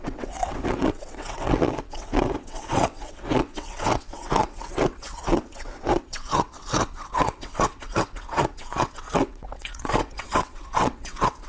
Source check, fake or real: fake